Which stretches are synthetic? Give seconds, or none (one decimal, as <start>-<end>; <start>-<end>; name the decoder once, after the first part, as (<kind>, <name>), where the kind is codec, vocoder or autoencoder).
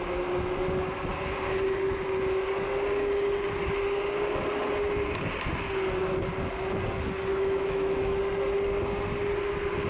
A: 7.3-8.2 (autoencoder, DAC-VAE)